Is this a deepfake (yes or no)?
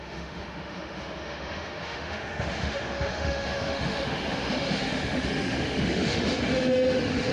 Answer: yes